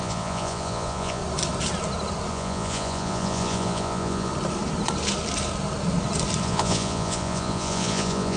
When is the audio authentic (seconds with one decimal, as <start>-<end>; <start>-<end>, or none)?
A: 1.2-2.3; 4.3-6.4